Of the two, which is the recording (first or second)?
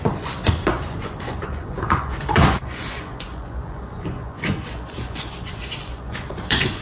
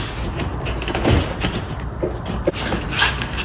second